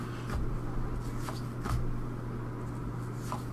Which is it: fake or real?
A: real